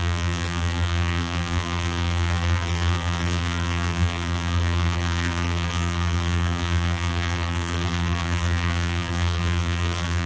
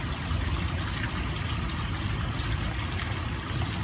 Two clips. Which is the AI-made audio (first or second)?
first